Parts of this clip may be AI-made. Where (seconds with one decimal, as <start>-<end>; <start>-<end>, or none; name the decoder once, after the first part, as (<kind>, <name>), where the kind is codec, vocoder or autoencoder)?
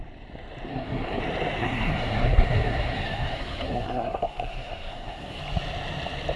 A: 0.7-1.2 (codec, SNAC); 1.6-5.4